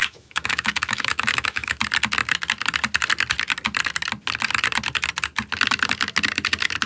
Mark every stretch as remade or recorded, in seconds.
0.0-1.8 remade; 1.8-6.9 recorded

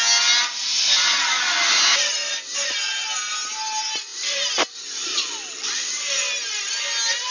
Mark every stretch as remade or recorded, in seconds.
0.0-7.3 recorded

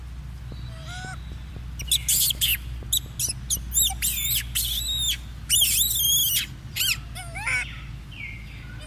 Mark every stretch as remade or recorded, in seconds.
0.0-8.9 recorded

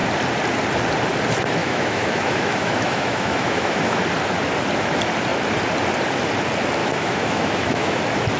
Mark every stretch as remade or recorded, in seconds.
0.0-1.6 recorded; 1.6-4.0 remade; 4.0-6.8 recorded; 6.8-8.0 remade; 8.0-8.4 recorded

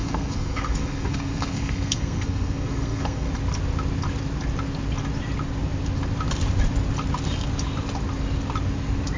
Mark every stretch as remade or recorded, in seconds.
0.0-3.3 remade; 3.3-9.2 recorded

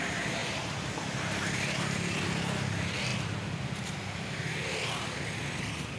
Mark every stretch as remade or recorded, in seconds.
0.0-0.4 recorded; 0.4-2.2 remade; 2.2-6.0 recorded